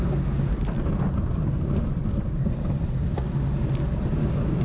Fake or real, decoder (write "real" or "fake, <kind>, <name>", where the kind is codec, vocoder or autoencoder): real